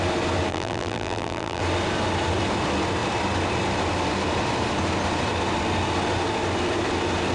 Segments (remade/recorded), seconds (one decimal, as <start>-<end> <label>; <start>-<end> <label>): 0.0-0.5 recorded; 0.5-1.6 remade; 1.6-7.3 recorded